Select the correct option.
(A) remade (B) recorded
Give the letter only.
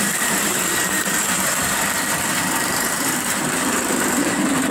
A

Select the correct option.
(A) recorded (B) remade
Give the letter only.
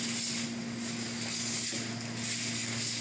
A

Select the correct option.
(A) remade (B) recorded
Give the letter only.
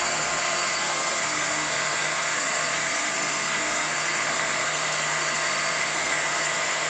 A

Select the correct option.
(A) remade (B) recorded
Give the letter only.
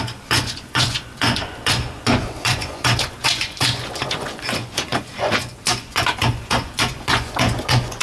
A